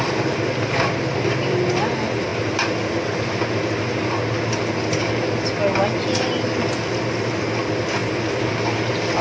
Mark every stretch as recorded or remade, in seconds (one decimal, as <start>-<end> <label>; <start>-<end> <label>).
0.0-9.2 recorded